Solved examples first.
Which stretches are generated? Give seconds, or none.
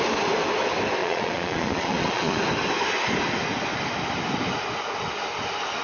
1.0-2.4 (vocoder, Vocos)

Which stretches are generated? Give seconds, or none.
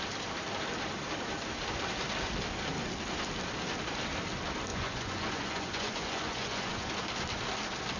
4.7-6.9 (vocoder, Vocos)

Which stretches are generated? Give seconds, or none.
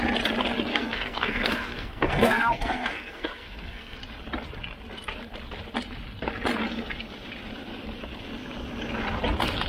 0.7-4.0 (codec, SNAC)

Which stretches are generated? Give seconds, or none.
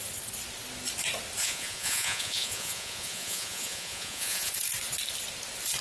1.4-4.5 (vocoder, Vocos)